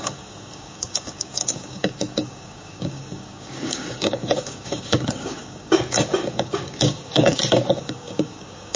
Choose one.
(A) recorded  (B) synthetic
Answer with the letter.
B